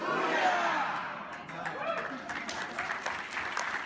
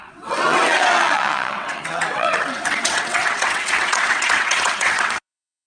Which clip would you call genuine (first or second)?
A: first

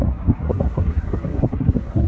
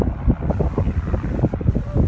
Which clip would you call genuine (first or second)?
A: second